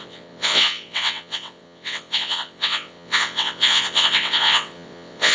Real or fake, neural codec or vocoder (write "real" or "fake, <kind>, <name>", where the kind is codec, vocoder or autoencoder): fake, vocoder, WaveNeXt